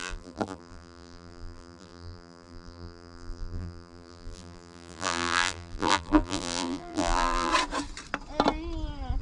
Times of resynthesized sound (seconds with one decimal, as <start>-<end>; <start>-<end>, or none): 0.0-7.5